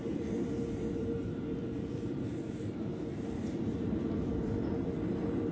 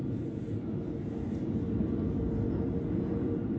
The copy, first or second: first